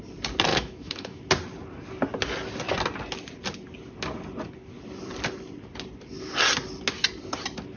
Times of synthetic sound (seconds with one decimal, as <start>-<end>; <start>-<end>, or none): 0.5-1.2